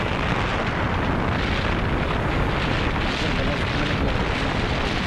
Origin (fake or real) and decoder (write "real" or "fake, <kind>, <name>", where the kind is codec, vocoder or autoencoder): real